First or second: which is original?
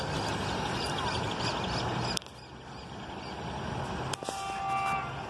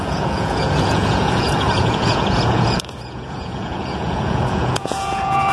first